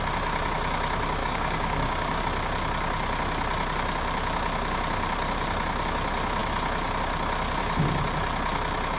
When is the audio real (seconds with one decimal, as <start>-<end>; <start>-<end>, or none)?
0.0-1.2; 2.2-9.0